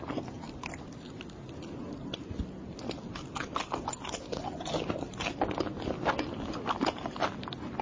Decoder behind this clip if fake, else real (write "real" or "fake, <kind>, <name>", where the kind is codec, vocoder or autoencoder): real